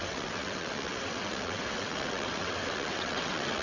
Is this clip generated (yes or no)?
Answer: yes